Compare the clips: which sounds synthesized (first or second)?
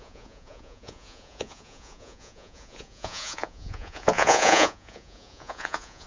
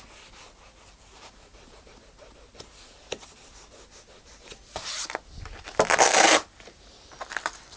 first